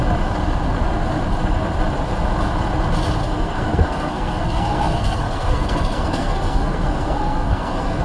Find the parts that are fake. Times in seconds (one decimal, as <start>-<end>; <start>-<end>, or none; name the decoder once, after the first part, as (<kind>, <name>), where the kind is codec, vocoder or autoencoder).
3.2-8.0 (codec, SNAC)